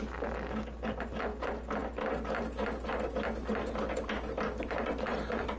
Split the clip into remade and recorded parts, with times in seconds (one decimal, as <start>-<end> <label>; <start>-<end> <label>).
0.0-5.6 recorded